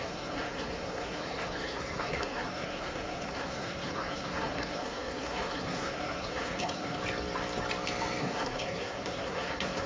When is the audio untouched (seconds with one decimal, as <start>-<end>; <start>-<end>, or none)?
7.0-8.2